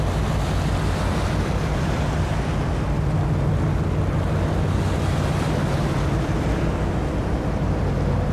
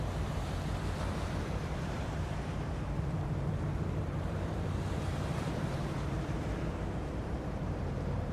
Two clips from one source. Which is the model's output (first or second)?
second